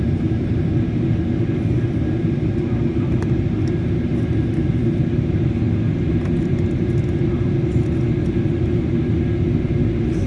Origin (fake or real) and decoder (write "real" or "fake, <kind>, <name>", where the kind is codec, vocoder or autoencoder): real